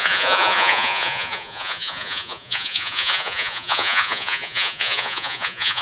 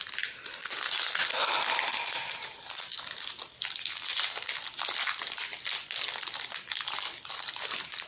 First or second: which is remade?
first